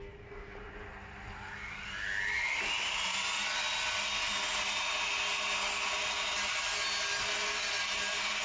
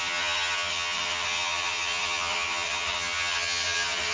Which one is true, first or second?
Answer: first